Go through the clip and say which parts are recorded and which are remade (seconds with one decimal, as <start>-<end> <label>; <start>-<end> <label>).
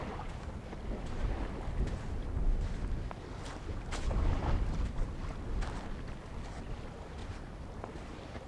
0.0-7.2 recorded; 7.2-8.5 remade